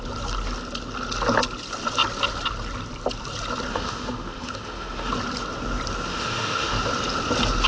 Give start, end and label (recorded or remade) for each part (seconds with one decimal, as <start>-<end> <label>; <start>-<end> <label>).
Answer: 0.0-3.7 recorded; 3.7-5.1 remade; 5.1-6.1 recorded; 6.1-6.8 remade; 6.8-7.7 recorded